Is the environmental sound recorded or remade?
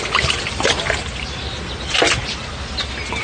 recorded